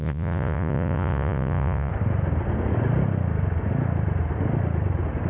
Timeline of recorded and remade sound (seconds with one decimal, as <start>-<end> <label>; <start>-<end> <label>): 0.0-1.9 remade; 1.9-5.3 recorded